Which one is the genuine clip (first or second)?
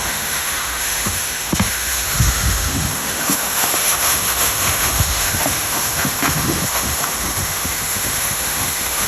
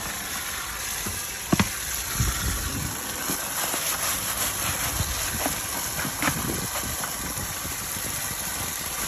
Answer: second